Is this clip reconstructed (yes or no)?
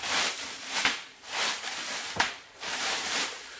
yes